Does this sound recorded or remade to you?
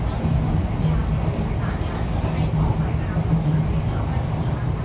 recorded